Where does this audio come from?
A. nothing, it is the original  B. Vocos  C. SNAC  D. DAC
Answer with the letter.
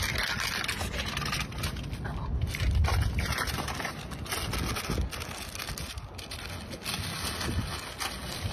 A